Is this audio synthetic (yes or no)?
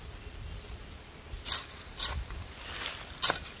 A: no